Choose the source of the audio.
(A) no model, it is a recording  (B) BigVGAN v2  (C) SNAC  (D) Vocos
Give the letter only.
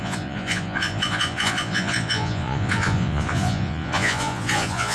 D